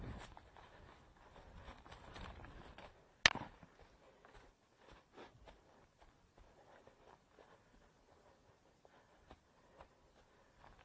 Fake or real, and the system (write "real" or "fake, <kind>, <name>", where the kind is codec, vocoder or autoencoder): real